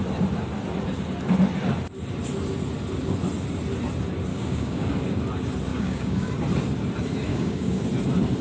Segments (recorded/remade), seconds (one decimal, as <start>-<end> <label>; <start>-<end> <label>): 0.0-4.3 recorded; 4.3-4.9 remade; 4.9-5.7 recorded; 5.7-6.3 remade; 6.3-7.3 recorded; 7.3-7.8 remade; 7.8-8.4 recorded